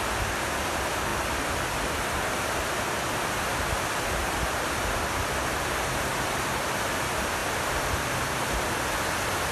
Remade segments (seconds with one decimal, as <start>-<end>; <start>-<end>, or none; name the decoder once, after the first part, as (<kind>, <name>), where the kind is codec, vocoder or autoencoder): 7.4-8.6 (vocoder, BigVGAN v2)